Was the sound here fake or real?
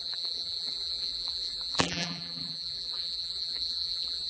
fake